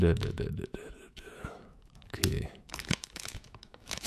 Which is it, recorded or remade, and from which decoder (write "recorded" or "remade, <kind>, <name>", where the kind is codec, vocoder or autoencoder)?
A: remade, autoencoder, DAC-VAE